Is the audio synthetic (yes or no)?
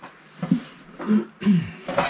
no